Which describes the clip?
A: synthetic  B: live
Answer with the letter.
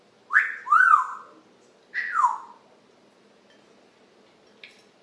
B